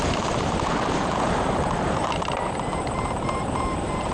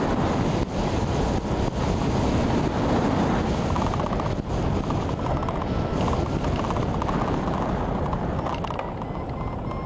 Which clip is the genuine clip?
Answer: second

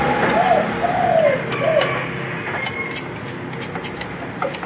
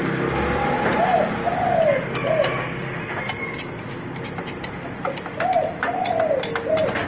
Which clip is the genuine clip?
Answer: first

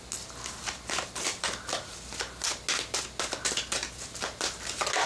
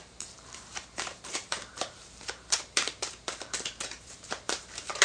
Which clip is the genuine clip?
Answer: first